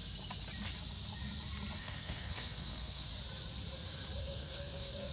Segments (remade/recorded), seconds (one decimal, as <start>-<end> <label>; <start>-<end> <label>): 0.0-1.8 recorded; 1.8-3.1 remade; 3.1-4.2 recorded; 4.2-5.1 remade